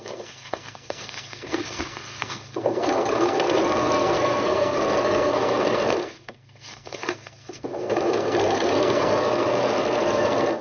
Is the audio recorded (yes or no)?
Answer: no